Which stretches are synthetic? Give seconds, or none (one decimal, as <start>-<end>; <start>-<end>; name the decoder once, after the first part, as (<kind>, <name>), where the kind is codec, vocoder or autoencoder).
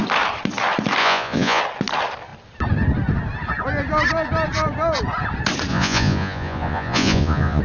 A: 1.0-1.6 (vocoder, Vocos); 5.7-7.6